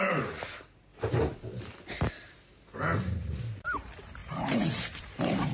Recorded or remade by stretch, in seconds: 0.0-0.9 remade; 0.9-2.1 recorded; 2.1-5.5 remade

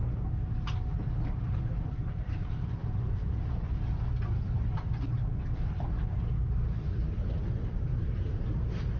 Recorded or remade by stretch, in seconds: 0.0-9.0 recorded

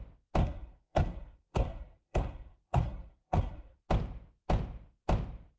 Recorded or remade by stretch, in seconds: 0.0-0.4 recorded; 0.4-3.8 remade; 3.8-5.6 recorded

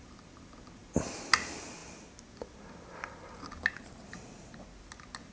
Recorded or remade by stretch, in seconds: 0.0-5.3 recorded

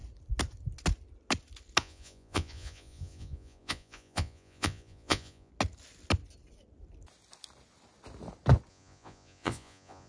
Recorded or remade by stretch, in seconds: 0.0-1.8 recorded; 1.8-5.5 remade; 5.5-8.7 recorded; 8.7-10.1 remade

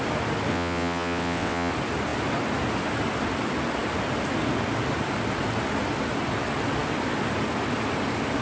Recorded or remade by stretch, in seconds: 0.0-0.5 recorded; 0.5-1.7 remade; 1.7-8.4 recorded

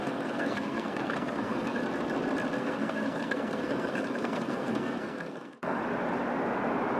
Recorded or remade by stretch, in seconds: 0.0-1.8 remade; 1.8-2.6 recorded; 2.6-5.8 remade; 5.8-7.0 recorded